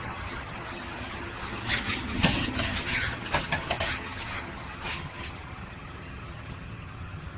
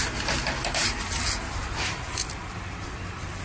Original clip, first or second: second